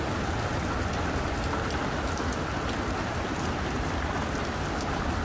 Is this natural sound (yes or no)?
yes